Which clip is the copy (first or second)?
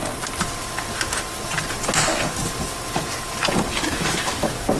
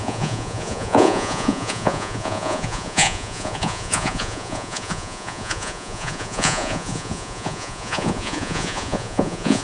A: second